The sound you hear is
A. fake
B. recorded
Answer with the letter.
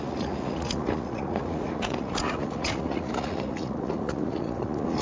A